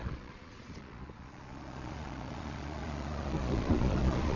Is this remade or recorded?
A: remade